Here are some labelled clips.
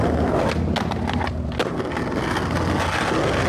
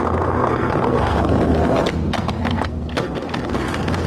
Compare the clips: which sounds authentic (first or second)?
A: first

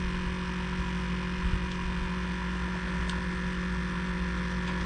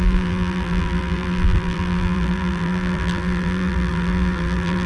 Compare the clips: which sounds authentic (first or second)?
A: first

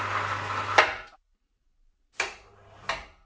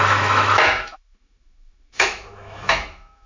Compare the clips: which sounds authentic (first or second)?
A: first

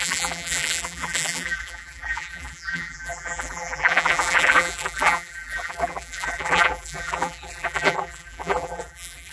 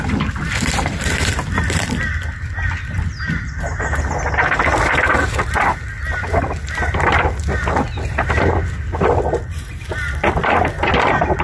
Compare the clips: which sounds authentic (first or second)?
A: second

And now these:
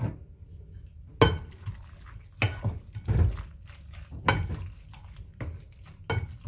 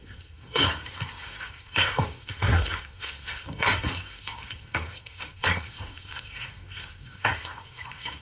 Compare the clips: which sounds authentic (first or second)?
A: first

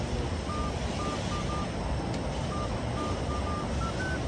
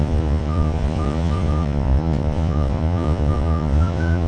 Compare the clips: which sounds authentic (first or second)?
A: first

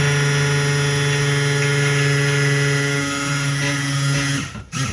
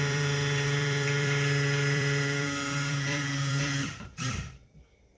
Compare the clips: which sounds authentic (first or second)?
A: first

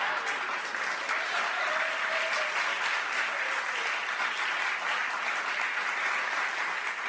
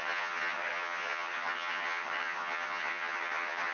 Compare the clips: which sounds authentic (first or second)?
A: first